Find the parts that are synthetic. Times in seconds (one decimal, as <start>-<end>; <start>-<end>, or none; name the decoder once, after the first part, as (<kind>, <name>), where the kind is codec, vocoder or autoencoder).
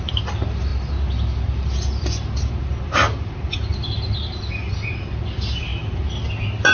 none